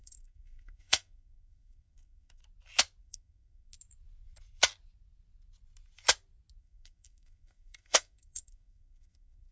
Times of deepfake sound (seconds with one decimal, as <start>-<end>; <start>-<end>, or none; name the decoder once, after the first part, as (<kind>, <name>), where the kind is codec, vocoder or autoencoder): 0.0-2.4 (codec, SNAC); 3.0-3.7; 6.6-9.5